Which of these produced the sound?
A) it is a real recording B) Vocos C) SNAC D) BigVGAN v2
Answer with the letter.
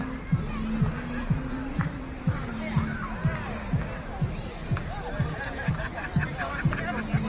A